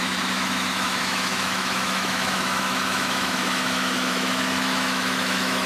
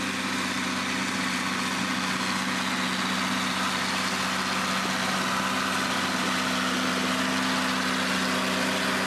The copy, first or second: first